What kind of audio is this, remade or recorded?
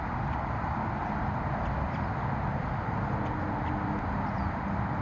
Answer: recorded